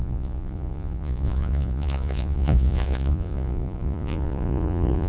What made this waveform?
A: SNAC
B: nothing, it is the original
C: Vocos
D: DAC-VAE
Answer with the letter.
C